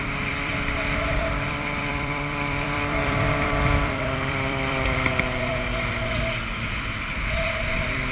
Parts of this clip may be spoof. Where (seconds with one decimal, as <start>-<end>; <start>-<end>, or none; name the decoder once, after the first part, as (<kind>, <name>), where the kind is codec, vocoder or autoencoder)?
0.0-5.5 (vocoder, BigVGAN v2); 6.9-8.1